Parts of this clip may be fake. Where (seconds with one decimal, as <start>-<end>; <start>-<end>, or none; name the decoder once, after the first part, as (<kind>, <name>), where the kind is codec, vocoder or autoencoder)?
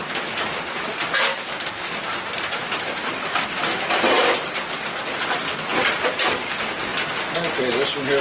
none